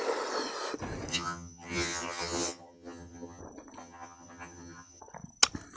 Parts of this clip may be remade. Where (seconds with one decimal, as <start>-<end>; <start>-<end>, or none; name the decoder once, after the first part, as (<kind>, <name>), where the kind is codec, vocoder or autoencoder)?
1.1-3.4 (vocoder, HiFi-GAN); 3.8-5.0